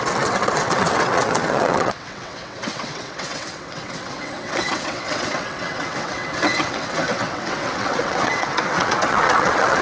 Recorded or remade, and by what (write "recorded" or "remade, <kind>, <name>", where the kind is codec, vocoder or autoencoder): remade, vocoder, WaveNeXt